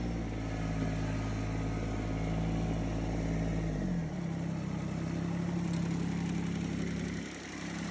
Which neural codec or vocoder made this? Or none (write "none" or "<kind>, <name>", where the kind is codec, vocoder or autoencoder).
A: none